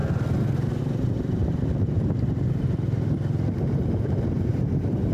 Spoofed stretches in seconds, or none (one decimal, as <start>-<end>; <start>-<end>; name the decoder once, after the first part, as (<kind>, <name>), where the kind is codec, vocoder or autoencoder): 0.8-5.1 (vocoder, BigVGAN v2)